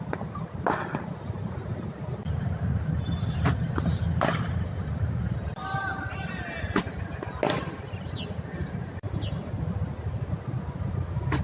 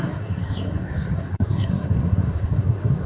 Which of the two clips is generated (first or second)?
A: second